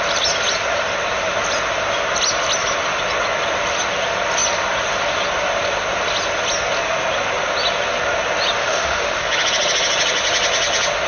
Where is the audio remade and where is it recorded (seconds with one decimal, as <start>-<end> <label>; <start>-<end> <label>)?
0.0-8.6 recorded; 8.6-9.3 remade; 9.3-11.1 recorded